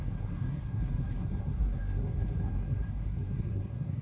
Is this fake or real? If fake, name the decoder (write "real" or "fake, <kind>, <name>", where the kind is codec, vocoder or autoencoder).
fake, codec, SNAC